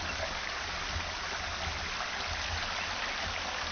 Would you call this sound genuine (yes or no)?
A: yes